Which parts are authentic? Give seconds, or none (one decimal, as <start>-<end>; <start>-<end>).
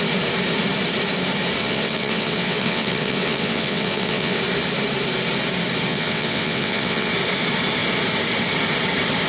0.0-1.6; 4.4-5.9; 7.1-9.3